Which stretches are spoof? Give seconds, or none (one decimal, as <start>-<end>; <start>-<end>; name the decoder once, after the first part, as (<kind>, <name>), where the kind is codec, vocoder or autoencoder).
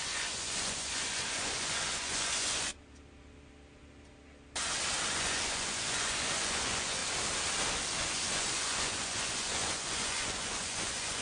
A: 0.0-2.7 (vocoder, Vocos); 5.1-7.0; 8.0-11.2